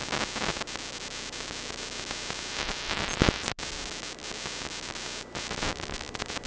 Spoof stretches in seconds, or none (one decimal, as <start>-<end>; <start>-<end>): none